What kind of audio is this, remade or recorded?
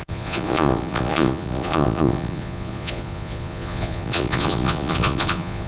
remade